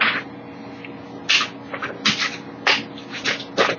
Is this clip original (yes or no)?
yes